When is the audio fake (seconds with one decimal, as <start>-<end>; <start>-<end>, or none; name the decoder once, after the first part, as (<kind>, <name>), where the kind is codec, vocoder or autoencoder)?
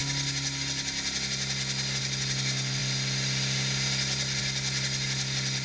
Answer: none